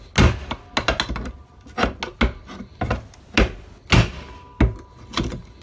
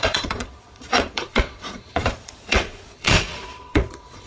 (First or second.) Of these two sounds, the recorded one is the first